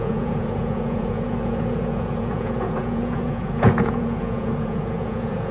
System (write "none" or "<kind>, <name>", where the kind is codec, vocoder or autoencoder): vocoder, Vocos